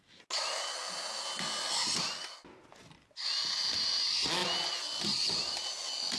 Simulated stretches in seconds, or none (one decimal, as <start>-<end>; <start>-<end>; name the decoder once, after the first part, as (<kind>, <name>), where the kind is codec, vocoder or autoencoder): none